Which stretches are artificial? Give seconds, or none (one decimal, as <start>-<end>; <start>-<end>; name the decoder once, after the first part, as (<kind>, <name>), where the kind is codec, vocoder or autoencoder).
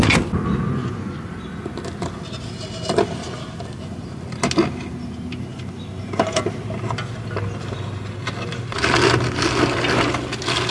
0.8-1.3 (vocoder, Vocos)